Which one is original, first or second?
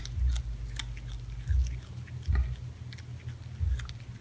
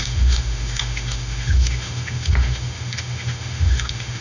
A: first